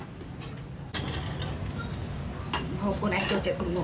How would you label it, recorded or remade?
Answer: recorded